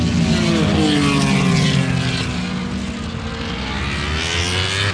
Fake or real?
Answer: real